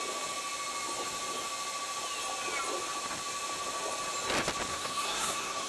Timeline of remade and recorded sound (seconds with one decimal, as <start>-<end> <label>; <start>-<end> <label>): 0.0-4.7 recorded; 4.7-5.7 remade